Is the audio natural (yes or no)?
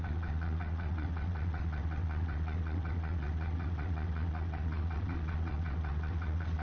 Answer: no